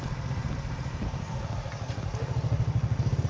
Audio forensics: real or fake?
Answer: real